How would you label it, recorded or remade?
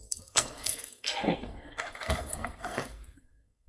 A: remade